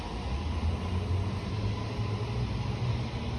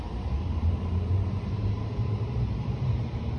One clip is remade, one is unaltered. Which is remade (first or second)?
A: second